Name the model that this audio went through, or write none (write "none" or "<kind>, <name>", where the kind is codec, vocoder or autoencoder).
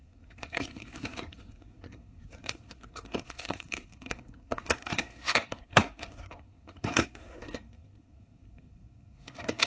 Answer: codec, SNAC